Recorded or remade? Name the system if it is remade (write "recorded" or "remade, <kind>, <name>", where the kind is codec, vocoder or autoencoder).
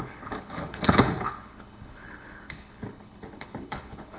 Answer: remade, codec, HILCodec